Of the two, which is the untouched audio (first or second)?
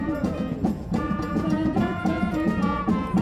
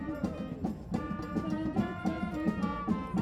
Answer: second